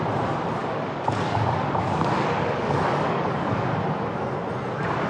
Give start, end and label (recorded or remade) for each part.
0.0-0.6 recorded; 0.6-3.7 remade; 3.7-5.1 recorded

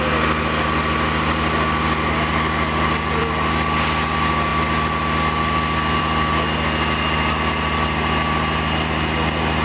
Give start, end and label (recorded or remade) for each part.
0.0-9.6 recorded